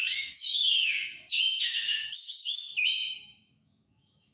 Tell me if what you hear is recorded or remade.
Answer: remade